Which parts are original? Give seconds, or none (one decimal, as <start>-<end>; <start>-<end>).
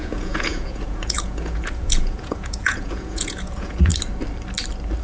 3.9-5.0